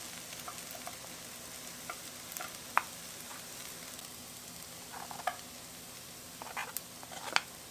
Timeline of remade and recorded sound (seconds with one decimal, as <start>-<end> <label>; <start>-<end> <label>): 0.0-3.3 recorded; 3.3-3.9 remade; 3.9-6.6 recorded; 6.6-7.3 remade; 7.3-7.7 recorded